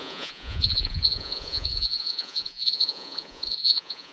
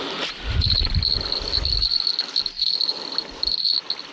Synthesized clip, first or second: first